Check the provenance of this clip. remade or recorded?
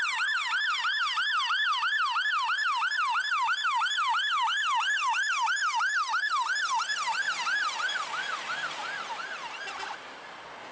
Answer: recorded